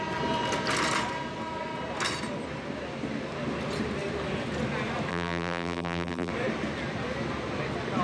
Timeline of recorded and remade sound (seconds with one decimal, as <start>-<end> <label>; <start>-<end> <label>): 0.0-5.1 recorded; 5.1-6.3 remade; 6.3-8.0 recorded